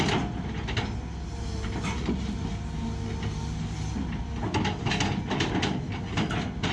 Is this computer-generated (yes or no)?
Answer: no